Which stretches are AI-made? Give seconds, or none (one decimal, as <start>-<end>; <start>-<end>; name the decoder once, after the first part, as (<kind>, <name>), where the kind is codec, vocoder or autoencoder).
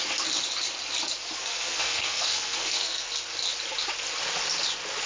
1.4-3.1 (codec, SNAC)